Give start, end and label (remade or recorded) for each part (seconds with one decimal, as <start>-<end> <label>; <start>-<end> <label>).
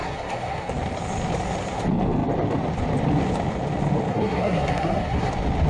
0.0-0.7 remade; 0.7-4.1 recorded; 4.1-5.3 remade; 5.3-5.7 recorded